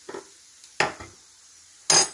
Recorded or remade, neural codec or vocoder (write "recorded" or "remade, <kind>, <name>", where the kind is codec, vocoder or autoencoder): recorded